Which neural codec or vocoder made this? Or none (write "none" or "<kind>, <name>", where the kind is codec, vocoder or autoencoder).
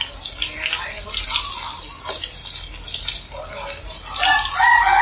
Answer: none